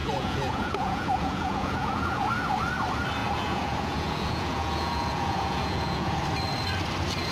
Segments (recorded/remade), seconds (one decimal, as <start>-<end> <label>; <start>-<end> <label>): 0.0-2.3 remade; 2.3-3.2 recorded; 3.2-6.2 remade; 6.2-7.3 recorded

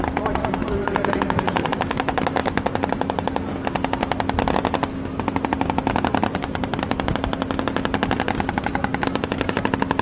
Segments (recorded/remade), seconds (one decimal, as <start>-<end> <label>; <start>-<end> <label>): 0.0-0.6 recorded; 0.6-1.7 remade; 1.7-6.1 recorded; 6.1-7.1 remade; 7.1-10.0 recorded

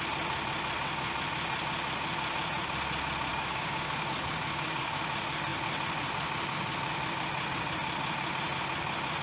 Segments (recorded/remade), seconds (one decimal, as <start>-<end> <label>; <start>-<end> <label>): 0.0-3.3 recorded; 3.3-5.0 remade; 5.0-9.2 recorded